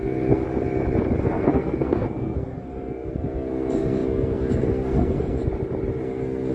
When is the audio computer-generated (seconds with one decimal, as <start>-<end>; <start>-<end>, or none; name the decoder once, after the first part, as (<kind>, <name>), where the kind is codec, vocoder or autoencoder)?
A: 0.0-0.4 (codec, SNAC); 1.2-5.4; 6.0-6.5